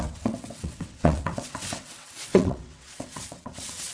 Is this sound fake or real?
fake